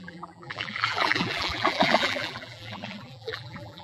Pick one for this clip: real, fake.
fake